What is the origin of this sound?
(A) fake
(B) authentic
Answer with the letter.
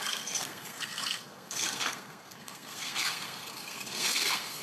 A